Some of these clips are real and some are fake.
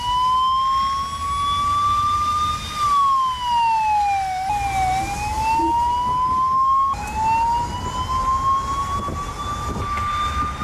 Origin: real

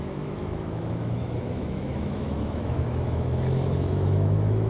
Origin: fake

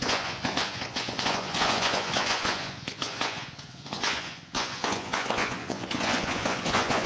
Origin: fake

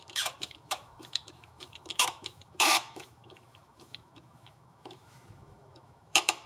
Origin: fake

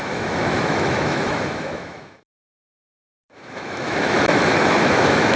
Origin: fake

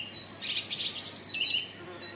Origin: real